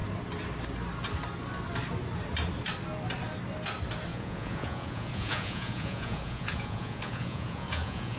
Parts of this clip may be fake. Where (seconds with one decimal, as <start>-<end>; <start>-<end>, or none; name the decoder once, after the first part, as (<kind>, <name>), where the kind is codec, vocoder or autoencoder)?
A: 4.1-8.2 (vocoder, Vocos)

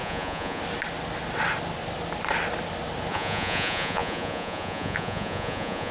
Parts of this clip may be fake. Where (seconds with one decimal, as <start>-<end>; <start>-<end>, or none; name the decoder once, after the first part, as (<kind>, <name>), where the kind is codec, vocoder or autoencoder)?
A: 0.0-0.6 (vocoder, Vocos); 3.1-5.9

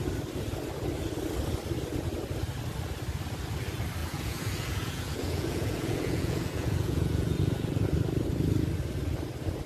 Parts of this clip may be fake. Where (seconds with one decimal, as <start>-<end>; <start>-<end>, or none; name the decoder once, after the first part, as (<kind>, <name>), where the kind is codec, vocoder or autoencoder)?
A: 4.0-7.8 (vocoder, Vocos)

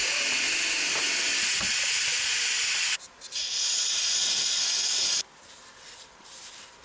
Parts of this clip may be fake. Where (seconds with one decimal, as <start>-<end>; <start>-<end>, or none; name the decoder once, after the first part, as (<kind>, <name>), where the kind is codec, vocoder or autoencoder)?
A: 2.1-5.1 (vocoder, Vocos)

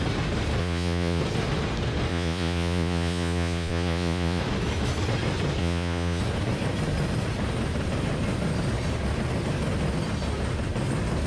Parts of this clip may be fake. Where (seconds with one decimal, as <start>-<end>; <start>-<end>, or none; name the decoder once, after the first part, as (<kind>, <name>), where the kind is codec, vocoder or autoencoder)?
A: 0.6-1.2 (vocoder, Vocos); 2.1-4.4; 5.6-6.2

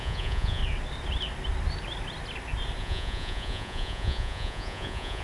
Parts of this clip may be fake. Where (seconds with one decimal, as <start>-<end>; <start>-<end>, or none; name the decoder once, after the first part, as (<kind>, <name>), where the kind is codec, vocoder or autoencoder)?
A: 0.0-0.6 (vocoder, Vocos); 2.8-5.2